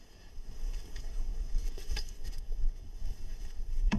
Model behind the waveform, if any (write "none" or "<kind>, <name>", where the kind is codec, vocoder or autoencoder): codec, DAC